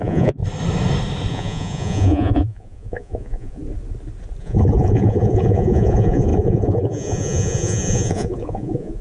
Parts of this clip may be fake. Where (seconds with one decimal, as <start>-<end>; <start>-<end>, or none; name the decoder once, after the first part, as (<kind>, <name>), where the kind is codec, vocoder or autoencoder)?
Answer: 0.0-0.4 (vocoder, Vocos); 1.3-3.6; 4.4-9.0

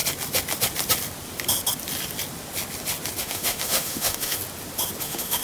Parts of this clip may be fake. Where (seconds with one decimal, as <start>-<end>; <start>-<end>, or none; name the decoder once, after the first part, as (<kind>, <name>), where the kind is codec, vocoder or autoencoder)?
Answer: 3.2-4.4 (autoencoder, DAC-VAE); 5.0-5.4

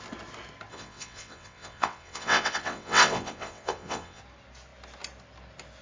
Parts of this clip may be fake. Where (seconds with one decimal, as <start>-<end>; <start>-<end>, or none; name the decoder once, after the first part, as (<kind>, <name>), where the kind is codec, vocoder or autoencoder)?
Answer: 0.7-4.2 (vocoder, WaveNeXt)

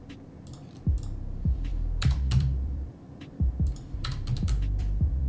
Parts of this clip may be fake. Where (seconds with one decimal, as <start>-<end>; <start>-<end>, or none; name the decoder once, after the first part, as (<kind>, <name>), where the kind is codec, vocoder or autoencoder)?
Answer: 1.7-5.3 (vocoder, BigVGAN v2)

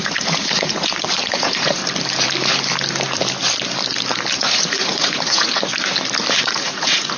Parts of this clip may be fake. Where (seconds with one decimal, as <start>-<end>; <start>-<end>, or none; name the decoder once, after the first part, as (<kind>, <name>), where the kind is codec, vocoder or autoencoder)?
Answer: 0.0-1.8 (vocoder, Vocos); 4.4-5.7; 6.4-7.2